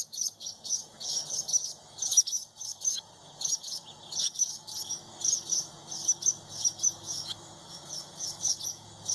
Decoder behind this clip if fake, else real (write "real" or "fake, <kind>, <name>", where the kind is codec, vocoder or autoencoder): fake, autoencoder, DAC-VAE